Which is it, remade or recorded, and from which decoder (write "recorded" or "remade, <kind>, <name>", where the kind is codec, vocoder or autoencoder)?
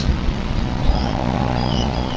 remade, vocoder, Vocos